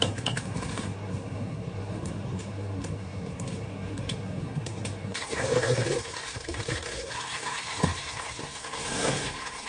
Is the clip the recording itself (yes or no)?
no